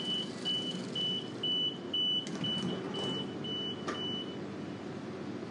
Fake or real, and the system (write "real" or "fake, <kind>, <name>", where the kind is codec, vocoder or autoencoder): real